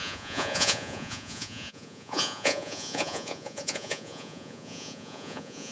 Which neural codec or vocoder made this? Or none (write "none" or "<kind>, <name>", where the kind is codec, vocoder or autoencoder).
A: vocoder, Vocos